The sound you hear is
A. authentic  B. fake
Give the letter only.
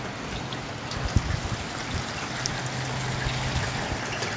A